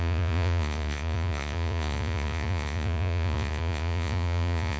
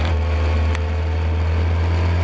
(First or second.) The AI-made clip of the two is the first